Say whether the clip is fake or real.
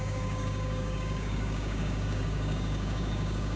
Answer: fake